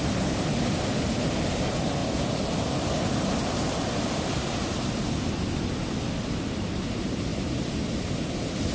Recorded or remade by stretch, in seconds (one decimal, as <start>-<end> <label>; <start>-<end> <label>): 0.0-8.7 recorded